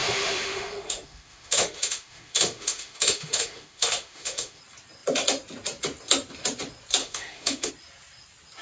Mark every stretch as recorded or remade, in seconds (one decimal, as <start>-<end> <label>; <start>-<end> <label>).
0.0-4.6 remade; 4.6-7.0 recorded; 7.0-7.7 remade; 7.7-8.6 recorded